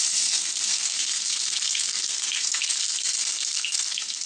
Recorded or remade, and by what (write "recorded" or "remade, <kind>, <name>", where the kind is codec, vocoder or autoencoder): remade, codec, SNAC